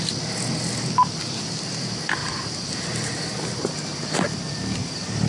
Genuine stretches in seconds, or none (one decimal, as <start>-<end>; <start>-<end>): 0.0-2.2; 3.7-5.3